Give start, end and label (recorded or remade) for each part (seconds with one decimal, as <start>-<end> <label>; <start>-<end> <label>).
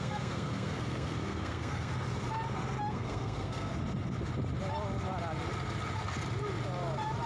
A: 0.0-1.9 remade; 1.9-2.9 recorded; 2.9-3.7 remade; 3.7-7.3 recorded